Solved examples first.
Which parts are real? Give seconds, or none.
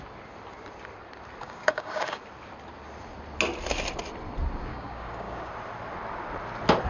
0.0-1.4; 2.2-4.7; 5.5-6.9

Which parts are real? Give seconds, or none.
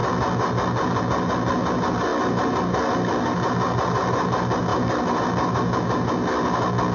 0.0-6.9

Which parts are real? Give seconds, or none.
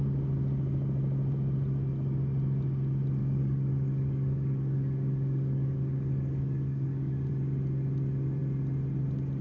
0.0-3.2; 7.3-9.4